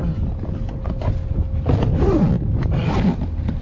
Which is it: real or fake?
real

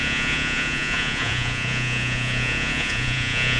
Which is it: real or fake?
fake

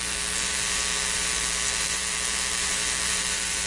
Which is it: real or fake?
fake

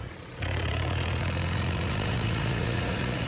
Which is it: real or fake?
fake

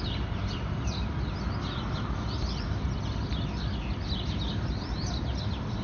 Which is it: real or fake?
real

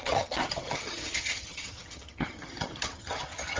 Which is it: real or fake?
fake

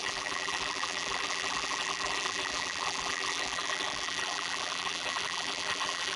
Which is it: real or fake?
fake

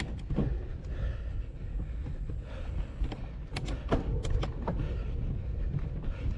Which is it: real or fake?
real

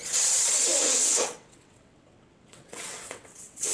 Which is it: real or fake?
fake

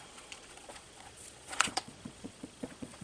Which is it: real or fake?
fake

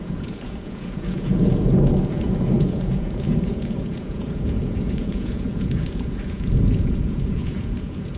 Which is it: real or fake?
fake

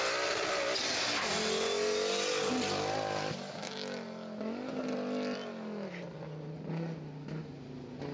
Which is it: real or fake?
real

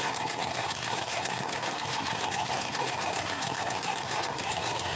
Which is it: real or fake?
fake